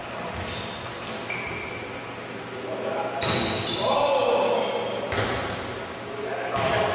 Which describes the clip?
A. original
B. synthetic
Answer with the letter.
A